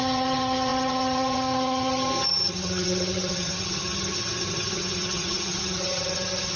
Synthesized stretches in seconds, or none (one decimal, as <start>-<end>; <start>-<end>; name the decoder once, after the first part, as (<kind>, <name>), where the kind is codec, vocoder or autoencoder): 0.0-6.6 (vocoder, HiFi-GAN)